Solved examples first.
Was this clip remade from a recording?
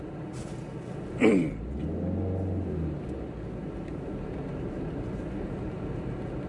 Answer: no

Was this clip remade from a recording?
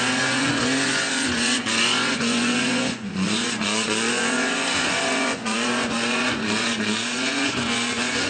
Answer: yes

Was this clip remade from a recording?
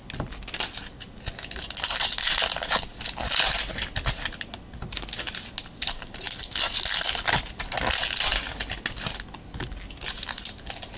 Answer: no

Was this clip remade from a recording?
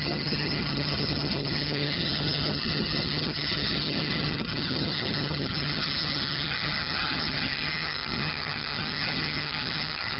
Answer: yes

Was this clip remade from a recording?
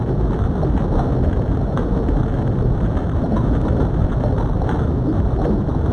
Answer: no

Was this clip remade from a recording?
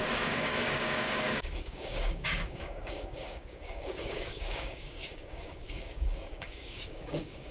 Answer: yes